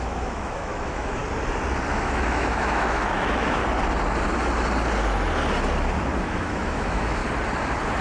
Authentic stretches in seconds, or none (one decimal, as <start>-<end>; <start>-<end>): 1.2-1.9; 3.6-6.2; 7.2-8.0